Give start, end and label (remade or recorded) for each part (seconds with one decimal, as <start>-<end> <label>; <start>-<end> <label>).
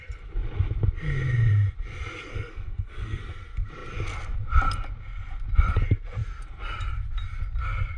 0.0-2.3 recorded; 2.3-3.2 remade; 3.2-8.0 recorded